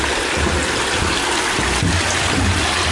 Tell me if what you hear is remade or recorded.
recorded